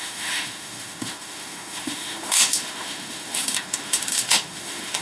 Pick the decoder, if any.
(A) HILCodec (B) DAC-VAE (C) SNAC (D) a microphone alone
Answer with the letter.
B